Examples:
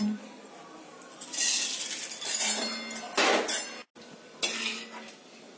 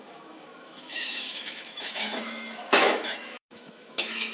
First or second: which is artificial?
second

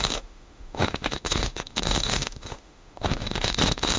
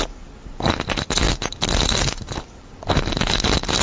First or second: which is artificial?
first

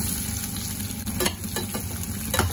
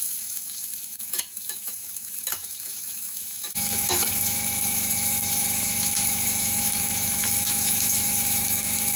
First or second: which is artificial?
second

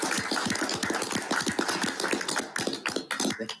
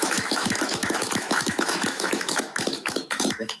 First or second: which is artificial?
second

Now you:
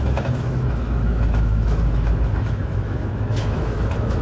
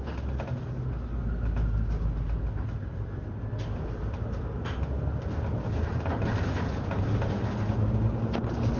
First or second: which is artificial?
first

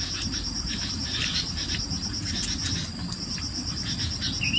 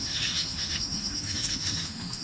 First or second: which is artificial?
second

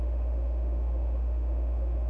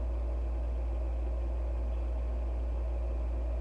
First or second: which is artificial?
first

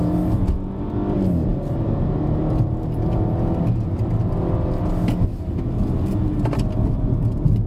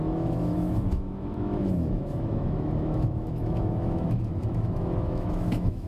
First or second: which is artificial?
second